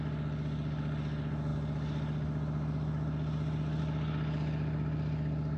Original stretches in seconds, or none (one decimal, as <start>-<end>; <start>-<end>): 0.0-5.6